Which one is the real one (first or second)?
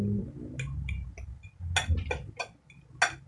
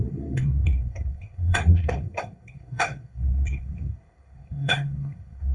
first